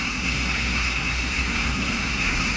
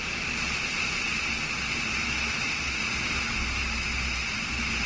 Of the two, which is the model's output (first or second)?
first